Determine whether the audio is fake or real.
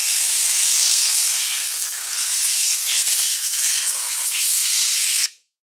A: fake